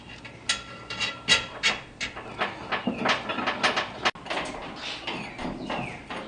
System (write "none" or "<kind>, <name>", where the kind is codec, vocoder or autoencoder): none